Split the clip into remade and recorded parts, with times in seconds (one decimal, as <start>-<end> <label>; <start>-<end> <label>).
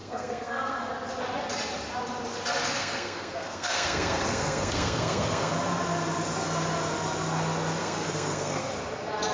0.0-0.9 remade; 0.9-2.8 recorded; 2.8-5.5 remade; 5.5-7.8 recorded; 7.8-8.7 remade; 8.7-9.3 recorded